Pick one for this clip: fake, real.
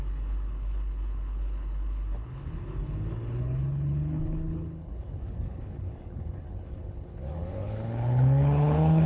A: fake